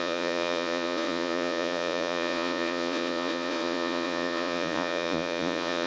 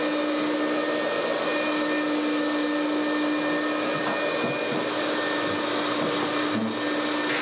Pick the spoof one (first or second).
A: first